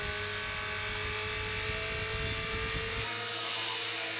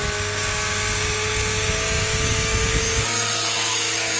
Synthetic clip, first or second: second